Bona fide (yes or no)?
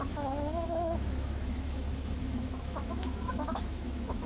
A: no